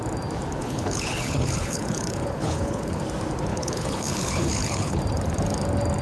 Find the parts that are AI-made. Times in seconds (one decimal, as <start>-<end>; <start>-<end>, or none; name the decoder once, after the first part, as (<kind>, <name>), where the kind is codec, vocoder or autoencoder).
0.6-3.0 (codec, HILCodec); 3.5-5.0